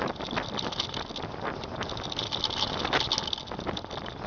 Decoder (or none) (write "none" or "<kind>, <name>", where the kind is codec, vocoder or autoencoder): none